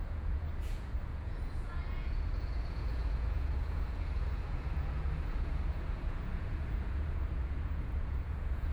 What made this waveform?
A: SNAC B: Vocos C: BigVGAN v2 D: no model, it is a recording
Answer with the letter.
B